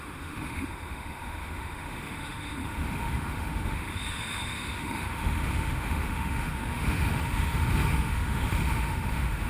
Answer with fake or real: fake